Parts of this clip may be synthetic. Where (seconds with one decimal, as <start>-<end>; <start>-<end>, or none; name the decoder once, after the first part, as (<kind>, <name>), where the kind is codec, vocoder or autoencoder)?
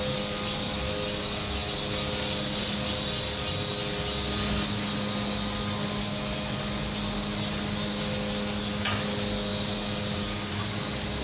none